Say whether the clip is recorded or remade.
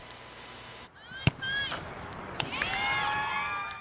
remade